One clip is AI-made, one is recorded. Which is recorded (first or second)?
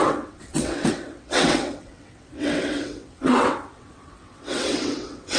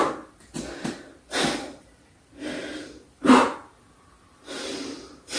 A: second